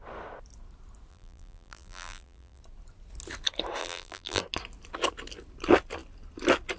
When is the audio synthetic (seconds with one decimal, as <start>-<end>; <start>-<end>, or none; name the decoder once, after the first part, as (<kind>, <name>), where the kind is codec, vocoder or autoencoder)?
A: 1.1-2.6 (vocoder, BigVGAN v2); 3.8-4.4